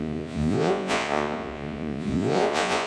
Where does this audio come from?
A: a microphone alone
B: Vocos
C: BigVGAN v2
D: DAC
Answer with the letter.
B